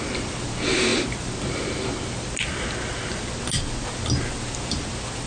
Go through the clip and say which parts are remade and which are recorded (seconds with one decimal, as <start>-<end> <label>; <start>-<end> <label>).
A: 0.0-5.3 recorded